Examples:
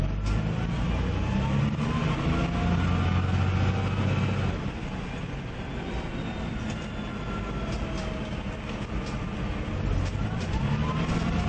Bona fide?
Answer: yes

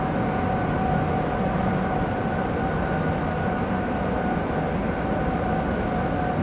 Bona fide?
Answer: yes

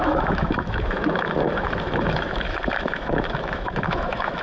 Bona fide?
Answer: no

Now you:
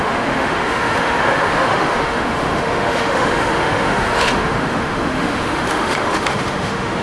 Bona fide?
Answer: no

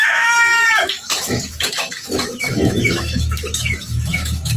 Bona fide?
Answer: no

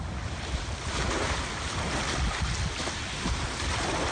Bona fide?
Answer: yes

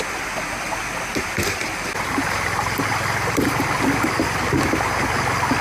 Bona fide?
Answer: yes